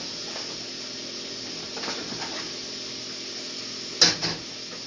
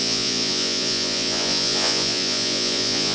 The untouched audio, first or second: first